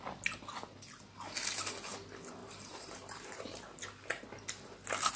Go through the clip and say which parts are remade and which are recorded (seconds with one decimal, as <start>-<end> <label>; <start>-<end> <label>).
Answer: 0.0-2.4 recorded; 2.4-3.6 remade; 3.6-5.2 recorded